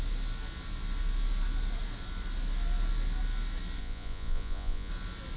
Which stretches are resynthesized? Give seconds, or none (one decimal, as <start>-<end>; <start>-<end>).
3.8-4.9